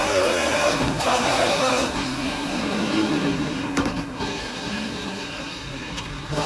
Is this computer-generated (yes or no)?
yes